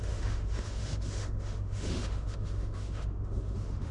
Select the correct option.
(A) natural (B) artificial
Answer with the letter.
B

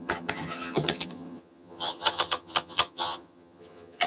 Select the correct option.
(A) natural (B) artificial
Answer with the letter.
B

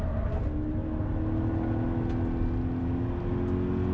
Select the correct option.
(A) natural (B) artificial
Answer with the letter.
A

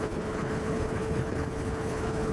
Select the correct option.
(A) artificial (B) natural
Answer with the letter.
A